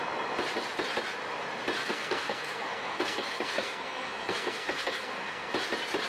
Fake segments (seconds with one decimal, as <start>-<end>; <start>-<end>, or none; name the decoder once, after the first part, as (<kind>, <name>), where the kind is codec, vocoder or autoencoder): 1.8-5.5 (codec, SNAC)